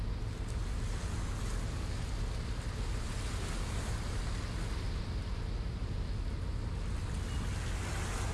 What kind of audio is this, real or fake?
real